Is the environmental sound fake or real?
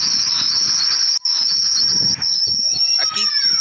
real